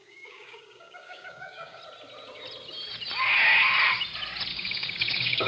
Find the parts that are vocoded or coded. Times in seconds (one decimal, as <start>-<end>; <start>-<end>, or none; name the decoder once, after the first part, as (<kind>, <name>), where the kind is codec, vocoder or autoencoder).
0.0-1.8 (codec, DAC); 4.5-5.5